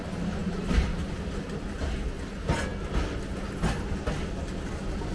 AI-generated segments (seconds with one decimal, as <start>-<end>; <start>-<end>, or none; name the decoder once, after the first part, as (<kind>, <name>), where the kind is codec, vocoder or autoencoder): none